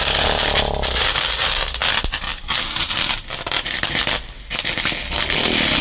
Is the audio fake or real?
real